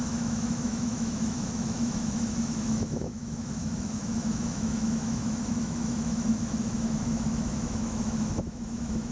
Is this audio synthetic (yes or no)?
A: yes